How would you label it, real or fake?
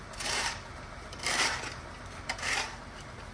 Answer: fake